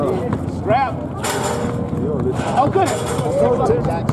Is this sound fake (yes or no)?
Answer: no